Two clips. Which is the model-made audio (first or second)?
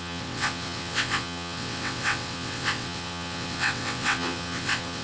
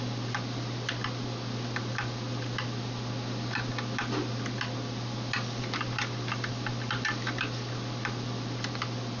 first